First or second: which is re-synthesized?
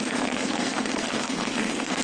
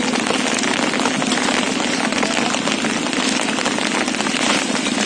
first